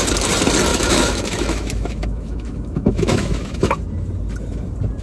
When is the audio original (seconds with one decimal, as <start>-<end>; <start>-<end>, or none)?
0.0-0.7; 3.7-5.0